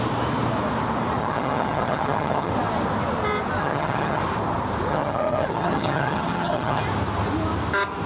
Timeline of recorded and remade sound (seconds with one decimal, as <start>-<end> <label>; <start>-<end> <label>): 0.0-1.2 recorded; 1.2-2.5 remade; 2.5-3.6 recorded; 3.6-4.2 remade; 4.2-4.9 recorded; 4.9-6.8 remade; 6.8-8.1 recorded